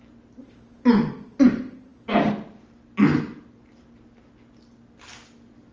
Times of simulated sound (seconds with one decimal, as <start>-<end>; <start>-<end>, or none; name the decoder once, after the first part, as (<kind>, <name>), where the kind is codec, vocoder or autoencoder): none